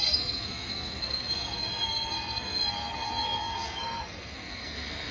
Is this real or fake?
fake